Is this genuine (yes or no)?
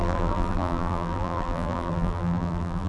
no